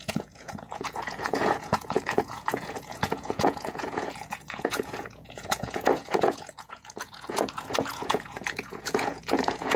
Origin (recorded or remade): remade